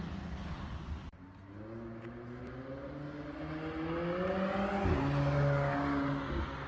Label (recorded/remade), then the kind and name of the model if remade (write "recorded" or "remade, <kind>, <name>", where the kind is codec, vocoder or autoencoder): recorded